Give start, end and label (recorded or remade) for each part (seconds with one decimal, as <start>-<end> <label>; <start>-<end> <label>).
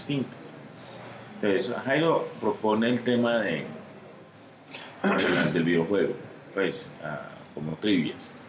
0.0-1.7 recorded; 1.7-3.5 remade; 3.5-8.5 recorded